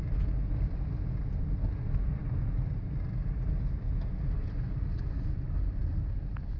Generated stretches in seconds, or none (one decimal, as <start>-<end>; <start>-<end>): none